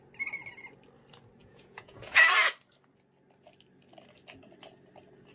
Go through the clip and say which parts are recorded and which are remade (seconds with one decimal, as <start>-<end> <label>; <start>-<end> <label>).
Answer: 0.0-1.4 recorded; 1.4-2.2 remade; 2.2-5.3 recorded